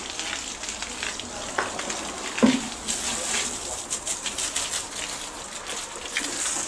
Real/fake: real